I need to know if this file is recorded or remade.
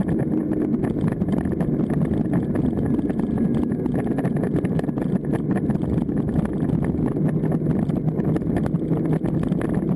recorded